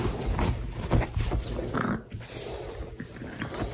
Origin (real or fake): fake